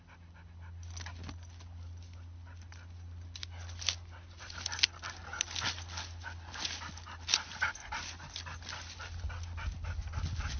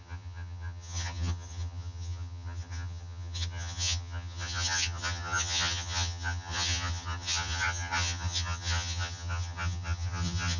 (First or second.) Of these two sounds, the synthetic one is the second